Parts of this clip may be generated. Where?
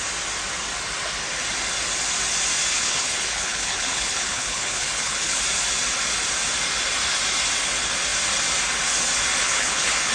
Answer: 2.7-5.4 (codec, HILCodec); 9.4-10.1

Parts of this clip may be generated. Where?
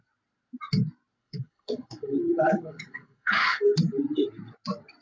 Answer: 1.2-3.6 (codec, HILCodec)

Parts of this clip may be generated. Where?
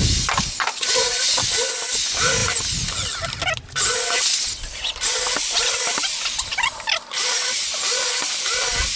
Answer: none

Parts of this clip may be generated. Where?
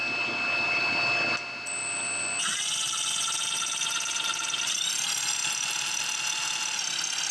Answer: none